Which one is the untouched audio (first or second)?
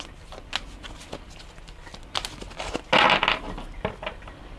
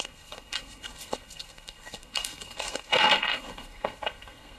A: first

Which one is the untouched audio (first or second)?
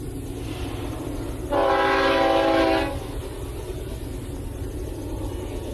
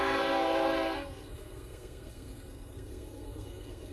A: first